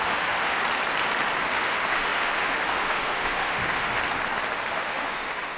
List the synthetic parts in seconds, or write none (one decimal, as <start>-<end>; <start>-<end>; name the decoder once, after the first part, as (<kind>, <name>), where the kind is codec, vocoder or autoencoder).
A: 0.0-0.6 (autoencoder, DAC-VAE); 1.4-4.0; 4.7-5.6